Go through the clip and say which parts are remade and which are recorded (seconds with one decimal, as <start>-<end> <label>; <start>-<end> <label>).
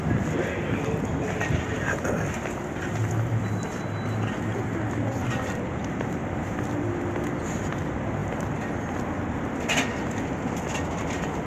0.0-11.5 recorded